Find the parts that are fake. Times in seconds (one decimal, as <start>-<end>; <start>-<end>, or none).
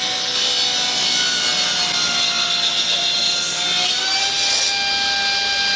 none